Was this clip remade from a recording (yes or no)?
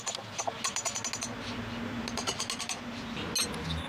no